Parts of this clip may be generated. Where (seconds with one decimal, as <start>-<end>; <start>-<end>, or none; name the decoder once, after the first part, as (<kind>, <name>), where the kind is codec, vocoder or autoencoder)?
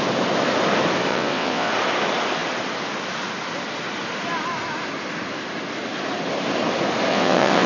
1.1-1.7 (vocoder, WaveNeXt); 7.1-7.7